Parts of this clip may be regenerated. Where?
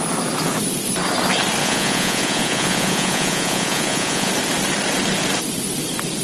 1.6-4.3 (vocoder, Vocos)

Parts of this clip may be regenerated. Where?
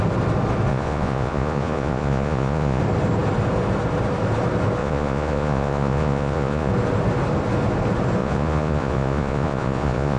0.7-2.8 (vocoder, Vocos); 4.8-6.7; 8.2-10.2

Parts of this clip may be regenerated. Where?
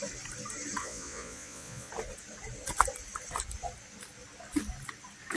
0.8-1.9 (vocoder, Vocos)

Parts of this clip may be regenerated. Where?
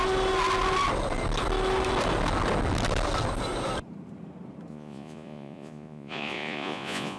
4.7-7.2 (vocoder, Vocos)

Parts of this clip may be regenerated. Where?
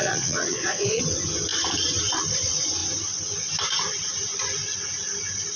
0.0-1.0 (vocoder, Vocos)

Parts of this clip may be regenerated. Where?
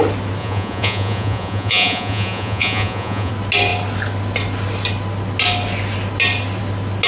0.4-3.3 (vocoder, Vocos)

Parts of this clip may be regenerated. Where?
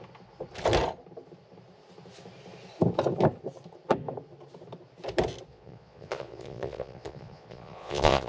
5.5-8.3 (vocoder, Vocos)